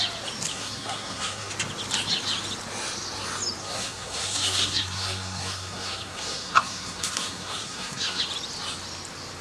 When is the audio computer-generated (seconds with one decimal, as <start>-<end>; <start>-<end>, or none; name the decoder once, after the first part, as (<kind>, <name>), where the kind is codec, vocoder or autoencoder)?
0.5-1.5 (codec, SNAC); 3.6-8.2